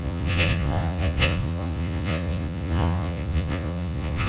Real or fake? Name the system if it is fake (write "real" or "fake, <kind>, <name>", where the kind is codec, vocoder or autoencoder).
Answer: fake, vocoder, Vocos